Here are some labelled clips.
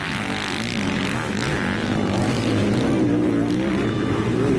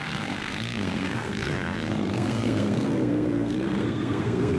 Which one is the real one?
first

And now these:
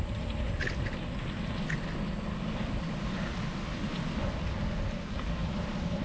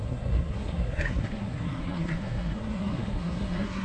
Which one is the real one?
first